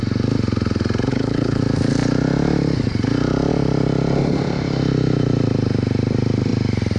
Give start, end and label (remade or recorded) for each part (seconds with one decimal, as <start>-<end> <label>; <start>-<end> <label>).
0.0-1.1 recorded; 1.1-1.6 remade; 1.6-7.0 recorded